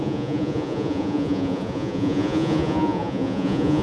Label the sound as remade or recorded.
remade